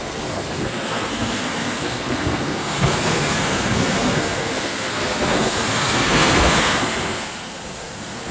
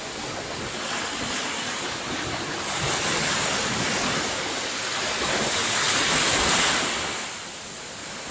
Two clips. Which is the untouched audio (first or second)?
second